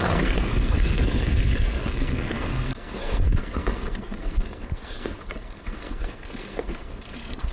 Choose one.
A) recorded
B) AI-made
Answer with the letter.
B